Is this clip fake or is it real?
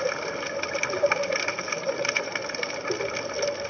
real